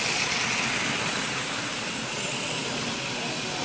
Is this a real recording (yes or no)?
yes